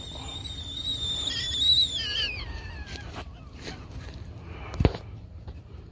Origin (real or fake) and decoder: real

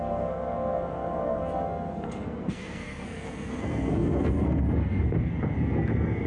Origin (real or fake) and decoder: fake, codec, SNAC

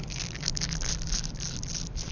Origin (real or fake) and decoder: real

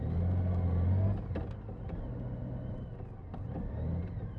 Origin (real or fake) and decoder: real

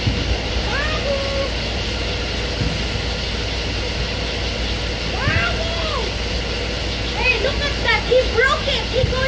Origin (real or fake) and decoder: real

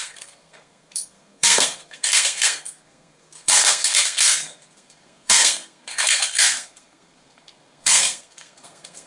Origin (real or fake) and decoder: fake, codec, SNAC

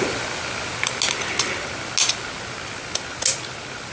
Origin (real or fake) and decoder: real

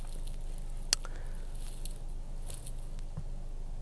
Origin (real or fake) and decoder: real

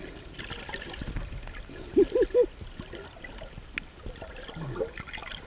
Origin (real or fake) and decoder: real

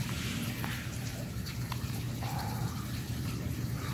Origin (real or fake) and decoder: fake, vocoder, BigVGAN v2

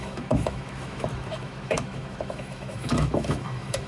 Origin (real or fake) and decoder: fake, autoencoder, DAC-VAE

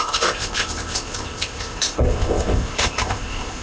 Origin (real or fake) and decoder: fake, codec, ZipCodec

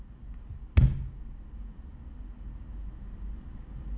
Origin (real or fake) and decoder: real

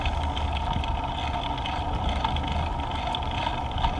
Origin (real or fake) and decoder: real